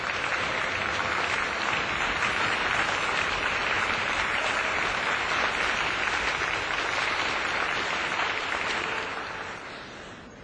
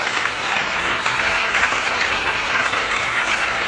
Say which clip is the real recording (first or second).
first